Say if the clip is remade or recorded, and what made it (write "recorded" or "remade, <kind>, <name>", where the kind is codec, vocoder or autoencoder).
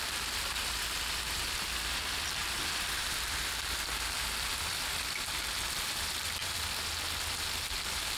remade, vocoder, BigVGAN v2